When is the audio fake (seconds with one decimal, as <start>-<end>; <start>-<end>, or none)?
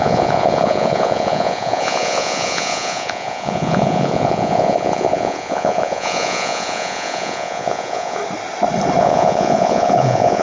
0.0-8.2; 9.0-10.4